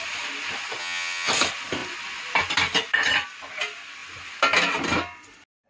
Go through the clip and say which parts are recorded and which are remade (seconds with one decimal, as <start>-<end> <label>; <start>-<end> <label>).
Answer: 0.0-0.8 recorded; 0.8-1.3 remade; 1.3-5.7 recorded

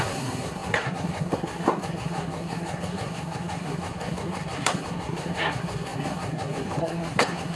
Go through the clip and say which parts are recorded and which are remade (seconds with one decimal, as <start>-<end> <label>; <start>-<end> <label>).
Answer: 0.0-7.6 remade

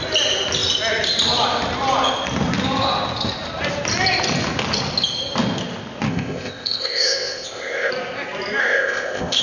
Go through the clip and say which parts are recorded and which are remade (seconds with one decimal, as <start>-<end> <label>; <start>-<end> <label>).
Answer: 0.0-6.1 recorded; 6.1-7.9 remade; 7.9-8.6 recorded; 8.6-9.4 remade

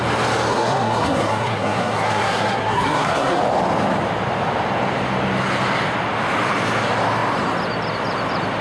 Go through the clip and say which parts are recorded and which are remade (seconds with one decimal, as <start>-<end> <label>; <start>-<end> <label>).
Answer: 0.0-0.5 recorded; 0.5-3.4 remade; 3.4-8.6 recorded

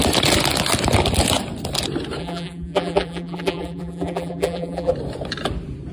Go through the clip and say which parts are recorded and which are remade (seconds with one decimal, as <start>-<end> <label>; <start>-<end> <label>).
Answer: 0.0-2.2 recorded; 2.2-4.9 remade; 4.9-5.9 recorded